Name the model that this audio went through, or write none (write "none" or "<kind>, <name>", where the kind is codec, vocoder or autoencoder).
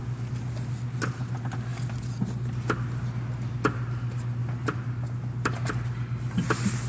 none